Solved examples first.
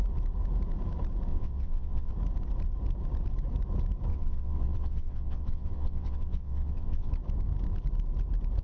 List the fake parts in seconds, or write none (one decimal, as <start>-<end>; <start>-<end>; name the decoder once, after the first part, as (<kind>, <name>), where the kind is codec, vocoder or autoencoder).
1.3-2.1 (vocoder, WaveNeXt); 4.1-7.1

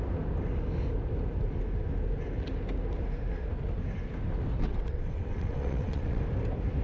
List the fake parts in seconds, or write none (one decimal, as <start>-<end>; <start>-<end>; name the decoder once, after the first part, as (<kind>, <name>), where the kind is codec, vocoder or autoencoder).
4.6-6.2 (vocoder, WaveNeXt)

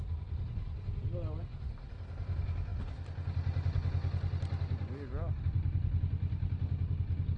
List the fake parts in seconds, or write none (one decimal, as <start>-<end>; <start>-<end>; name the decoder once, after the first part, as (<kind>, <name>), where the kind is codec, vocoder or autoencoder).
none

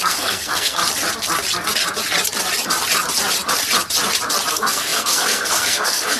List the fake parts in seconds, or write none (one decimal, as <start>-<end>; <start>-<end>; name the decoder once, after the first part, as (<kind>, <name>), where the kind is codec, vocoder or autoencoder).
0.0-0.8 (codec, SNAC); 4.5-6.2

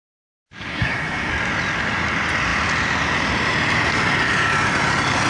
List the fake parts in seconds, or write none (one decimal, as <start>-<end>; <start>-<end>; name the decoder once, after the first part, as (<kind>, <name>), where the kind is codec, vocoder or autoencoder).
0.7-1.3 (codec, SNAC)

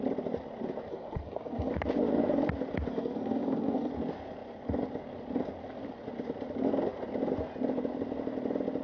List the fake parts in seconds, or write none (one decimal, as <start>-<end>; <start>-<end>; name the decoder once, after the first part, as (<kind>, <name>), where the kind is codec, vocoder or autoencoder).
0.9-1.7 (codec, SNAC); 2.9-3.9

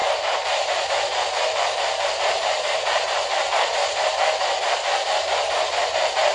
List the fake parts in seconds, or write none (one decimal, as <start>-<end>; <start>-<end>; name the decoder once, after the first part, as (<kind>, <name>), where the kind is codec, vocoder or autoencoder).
0.0-6.3 (vocoder, BigVGAN v2)